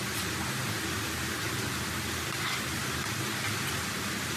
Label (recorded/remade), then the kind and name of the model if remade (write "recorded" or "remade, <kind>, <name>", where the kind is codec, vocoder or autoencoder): recorded